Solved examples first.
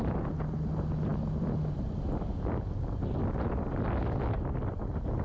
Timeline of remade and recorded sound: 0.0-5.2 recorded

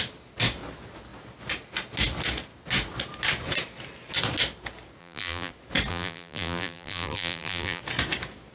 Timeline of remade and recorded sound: 0.0-5.0 recorded; 5.0-5.5 remade; 5.5-5.9 recorded; 5.9-7.8 remade; 7.8-8.5 recorded

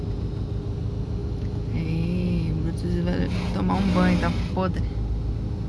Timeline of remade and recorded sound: 0.0-5.7 recorded

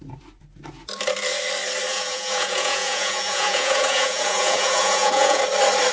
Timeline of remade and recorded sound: 0.0-1.9 recorded; 1.9-5.4 remade; 5.4-5.9 recorded

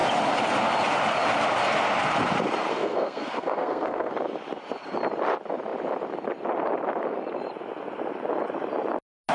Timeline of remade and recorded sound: 0.0-2.7 recorded; 2.7-4.1 remade; 4.1-9.3 recorded

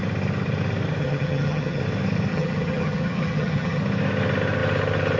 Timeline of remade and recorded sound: 0.0-1.0 recorded; 1.0-1.8 remade; 1.8-2.3 recorded; 2.3-3.8 remade; 3.8-5.2 recorded